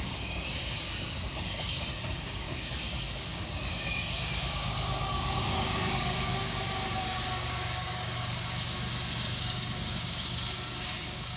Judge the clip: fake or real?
fake